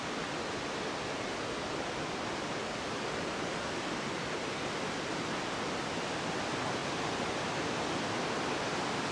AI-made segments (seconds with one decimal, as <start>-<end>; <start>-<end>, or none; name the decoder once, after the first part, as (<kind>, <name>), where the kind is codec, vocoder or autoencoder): none